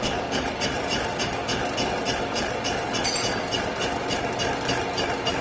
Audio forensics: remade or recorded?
recorded